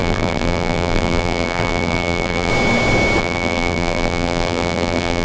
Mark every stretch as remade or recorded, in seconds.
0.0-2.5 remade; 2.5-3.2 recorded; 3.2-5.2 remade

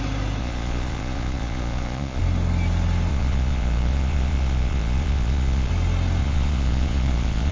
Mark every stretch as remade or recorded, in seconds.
0.0-0.4 recorded; 0.4-2.2 remade; 2.2-3.1 recorded; 3.1-5.7 remade; 5.7-6.2 recorded; 6.2-7.5 remade

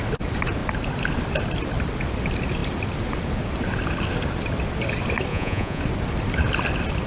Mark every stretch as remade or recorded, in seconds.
0.0-5.3 recorded; 5.3-5.8 remade; 5.8-7.1 recorded

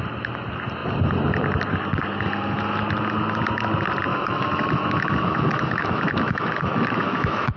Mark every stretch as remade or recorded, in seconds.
0.0-4.1 recorded; 4.1-7.6 remade

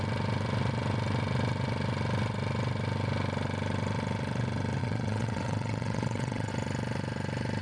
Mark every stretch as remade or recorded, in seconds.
0.0-4.8 recorded; 4.8-6.5 remade; 6.5-7.6 recorded